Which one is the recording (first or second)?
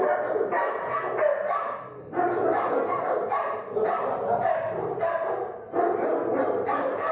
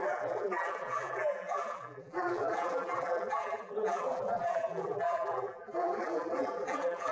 first